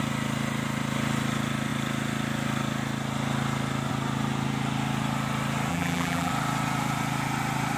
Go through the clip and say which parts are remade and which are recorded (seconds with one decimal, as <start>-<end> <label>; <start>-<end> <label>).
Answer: 0.0-5.7 recorded; 5.7-6.3 remade; 6.3-7.8 recorded